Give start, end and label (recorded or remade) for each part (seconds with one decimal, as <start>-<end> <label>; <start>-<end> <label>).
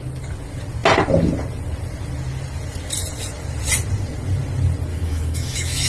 0.0-4.9 recorded; 4.9-5.9 remade